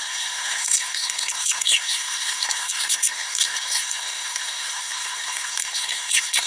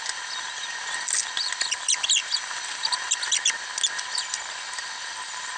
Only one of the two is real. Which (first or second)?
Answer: second